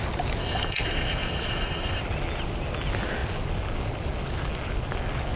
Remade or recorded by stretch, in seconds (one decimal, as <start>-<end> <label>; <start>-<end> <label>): 0.0-0.4 recorded; 0.4-2.0 remade; 2.0-5.4 recorded